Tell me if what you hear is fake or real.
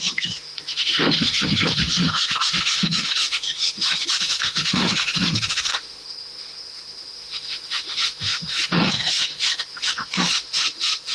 fake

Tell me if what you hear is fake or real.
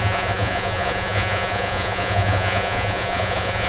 fake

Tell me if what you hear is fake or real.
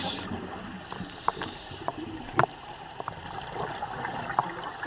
real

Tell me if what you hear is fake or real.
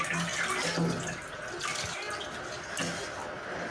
real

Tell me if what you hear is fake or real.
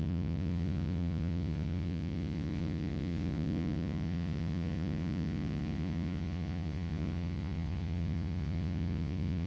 fake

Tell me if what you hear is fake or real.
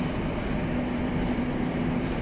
real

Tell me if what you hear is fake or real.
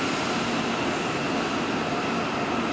real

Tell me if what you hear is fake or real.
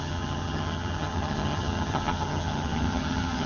fake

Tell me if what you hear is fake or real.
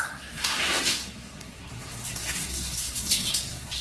fake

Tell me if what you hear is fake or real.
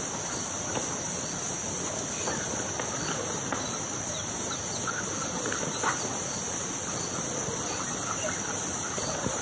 real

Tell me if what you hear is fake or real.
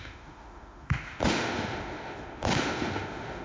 fake